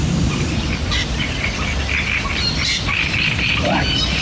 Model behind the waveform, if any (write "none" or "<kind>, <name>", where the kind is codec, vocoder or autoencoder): vocoder, BigVGAN v2